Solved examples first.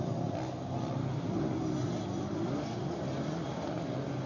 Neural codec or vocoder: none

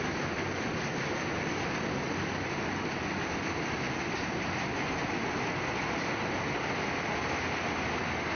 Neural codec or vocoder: none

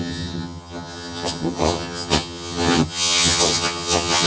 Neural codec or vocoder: vocoder, HiFi-GAN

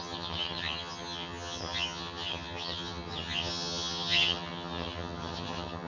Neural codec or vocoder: vocoder, HiFi-GAN